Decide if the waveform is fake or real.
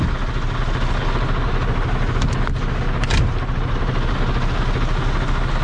real